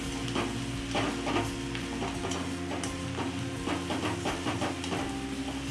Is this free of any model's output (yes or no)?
yes